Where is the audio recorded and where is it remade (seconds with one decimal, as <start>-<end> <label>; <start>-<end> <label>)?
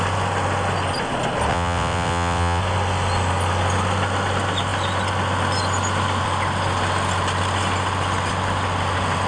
0.0-1.5 recorded; 1.5-2.6 remade; 2.6-9.3 recorded